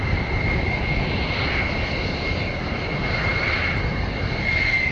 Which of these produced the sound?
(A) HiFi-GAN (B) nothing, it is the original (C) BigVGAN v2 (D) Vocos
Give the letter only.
B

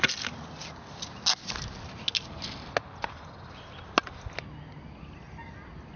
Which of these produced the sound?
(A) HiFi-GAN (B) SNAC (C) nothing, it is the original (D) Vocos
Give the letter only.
C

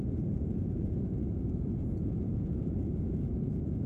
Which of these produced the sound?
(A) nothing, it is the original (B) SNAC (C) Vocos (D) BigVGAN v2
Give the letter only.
C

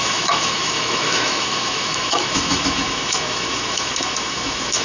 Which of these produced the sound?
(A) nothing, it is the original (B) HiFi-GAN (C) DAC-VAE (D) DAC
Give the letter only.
C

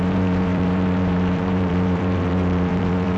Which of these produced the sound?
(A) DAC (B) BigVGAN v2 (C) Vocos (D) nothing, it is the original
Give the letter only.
B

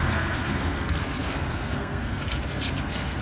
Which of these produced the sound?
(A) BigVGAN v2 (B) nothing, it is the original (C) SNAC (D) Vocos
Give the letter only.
C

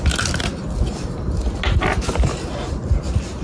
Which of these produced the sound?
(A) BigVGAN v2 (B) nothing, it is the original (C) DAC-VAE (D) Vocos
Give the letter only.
B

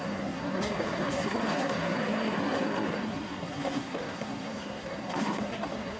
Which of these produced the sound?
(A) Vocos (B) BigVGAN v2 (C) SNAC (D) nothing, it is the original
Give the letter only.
C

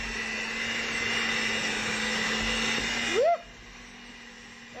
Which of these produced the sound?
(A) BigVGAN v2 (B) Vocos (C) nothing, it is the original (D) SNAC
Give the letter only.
C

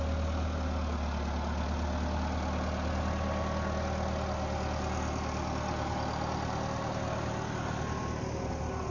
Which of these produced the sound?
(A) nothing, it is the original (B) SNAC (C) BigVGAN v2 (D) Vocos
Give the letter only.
A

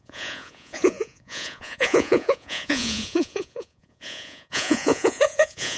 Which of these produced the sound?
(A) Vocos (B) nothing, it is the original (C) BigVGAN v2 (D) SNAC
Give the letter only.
A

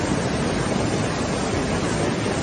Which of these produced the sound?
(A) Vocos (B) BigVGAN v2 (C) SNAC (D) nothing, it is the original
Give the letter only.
D